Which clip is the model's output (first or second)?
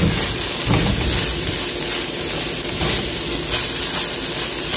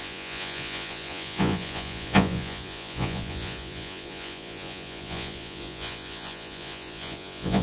second